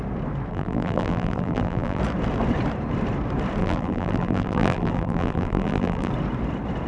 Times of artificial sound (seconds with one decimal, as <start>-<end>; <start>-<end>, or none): 0.5-2.0; 3.6-6.1